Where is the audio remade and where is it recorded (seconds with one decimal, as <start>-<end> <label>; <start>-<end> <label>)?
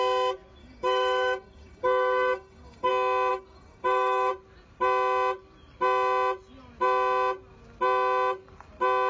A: 0.0-0.6 recorded; 0.6-2.9 remade; 2.9-3.3 recorded; 3.3-4.3 remade; 4.3-9.1 recorded